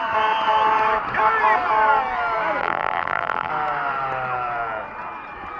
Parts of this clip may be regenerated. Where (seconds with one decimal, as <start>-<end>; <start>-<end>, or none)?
2.6-3.5